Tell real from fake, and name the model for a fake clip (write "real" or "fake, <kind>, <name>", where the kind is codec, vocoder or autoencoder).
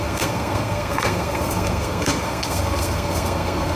fake, codec, SNAC